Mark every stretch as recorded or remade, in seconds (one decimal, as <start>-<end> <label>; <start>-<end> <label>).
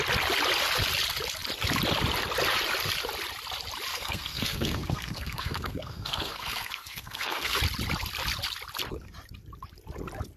0.0-3.9 recorded; 3.9-7.6 remade; 7.6-10.4 recorded